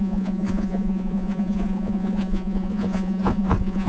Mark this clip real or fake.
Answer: fake